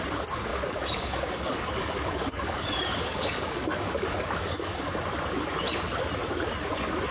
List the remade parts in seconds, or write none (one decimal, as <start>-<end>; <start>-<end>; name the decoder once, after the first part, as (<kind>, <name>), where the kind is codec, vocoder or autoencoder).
0.5-4.8 (codec, DAC)